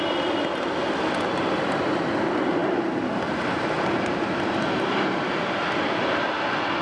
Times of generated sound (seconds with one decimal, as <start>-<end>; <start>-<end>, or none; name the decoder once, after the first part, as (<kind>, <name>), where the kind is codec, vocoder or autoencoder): none